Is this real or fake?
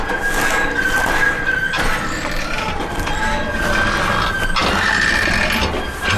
real